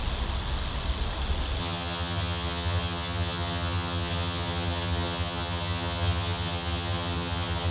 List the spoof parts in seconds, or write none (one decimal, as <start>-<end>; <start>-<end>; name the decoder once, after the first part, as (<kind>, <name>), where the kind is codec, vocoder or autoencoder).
1.6-7.7 (vocoder, HiFi-GAN)